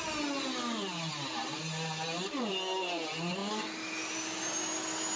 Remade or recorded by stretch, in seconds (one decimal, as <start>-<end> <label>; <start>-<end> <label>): 0.0-5.2 recorded